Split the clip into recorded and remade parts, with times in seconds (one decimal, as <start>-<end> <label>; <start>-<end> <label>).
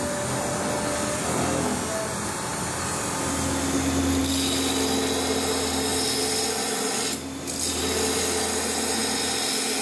0.0-9.8 recorded